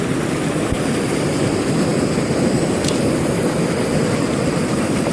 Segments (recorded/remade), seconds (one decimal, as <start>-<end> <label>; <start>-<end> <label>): 0.0-5.1 remade